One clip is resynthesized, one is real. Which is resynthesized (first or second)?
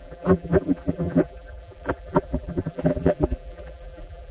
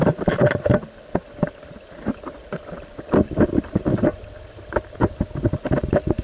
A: first